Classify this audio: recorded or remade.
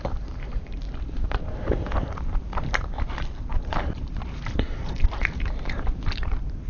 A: remade